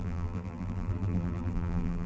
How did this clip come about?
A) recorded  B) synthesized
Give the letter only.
B